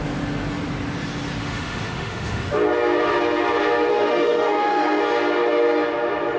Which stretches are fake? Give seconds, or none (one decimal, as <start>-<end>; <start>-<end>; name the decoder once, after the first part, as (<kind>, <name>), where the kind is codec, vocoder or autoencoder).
1.4-2.5 (autoencoder, DAC-VAE); 3.9-5.0